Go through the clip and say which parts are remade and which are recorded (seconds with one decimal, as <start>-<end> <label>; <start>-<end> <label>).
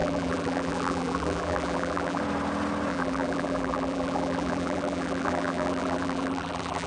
0.0-2.2 remade; 2.2-2.9 recorded; 2.9-6.9 remade